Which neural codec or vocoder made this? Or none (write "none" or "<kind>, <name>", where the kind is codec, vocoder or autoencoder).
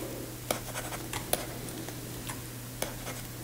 none